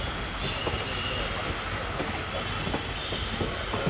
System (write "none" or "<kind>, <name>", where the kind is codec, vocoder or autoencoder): none